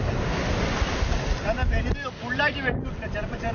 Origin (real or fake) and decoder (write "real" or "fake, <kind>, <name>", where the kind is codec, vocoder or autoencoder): real